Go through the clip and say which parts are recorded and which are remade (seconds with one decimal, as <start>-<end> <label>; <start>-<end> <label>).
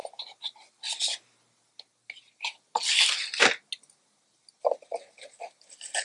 0.0-6.0 recorded